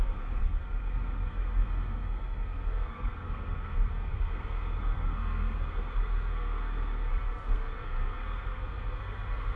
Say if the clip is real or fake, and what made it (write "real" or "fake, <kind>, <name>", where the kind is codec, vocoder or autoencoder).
fake, codec, SNAC